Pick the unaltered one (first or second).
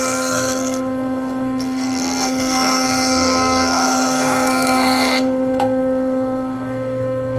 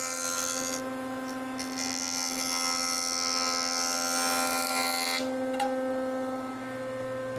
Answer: second